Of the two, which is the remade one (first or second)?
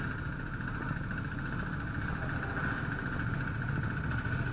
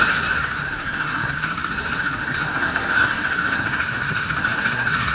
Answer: second